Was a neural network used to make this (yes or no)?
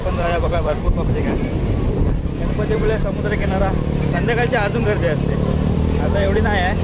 yes